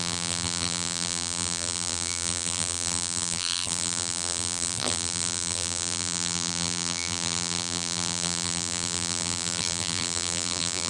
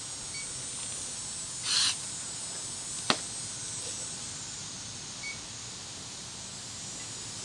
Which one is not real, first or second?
first